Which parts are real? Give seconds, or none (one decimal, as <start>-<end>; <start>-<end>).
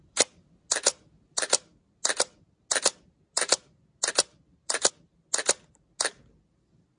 0.0-7.0